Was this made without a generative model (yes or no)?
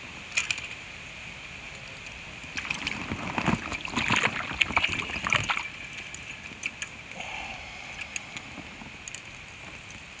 yes